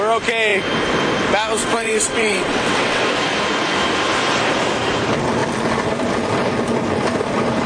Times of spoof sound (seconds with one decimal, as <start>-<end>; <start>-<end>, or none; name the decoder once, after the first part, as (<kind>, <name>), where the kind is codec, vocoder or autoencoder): 1.6-3.0 (vocoder, WaveNeXt)